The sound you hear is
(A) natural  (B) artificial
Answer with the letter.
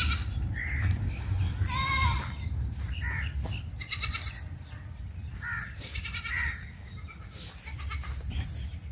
A